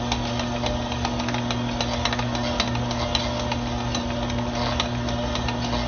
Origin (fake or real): real